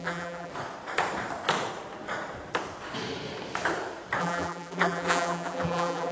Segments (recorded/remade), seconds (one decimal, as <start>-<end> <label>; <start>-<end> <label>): 0.0-0.5 remade; 0.5-4.2 recorded; 4.2-6.1 remade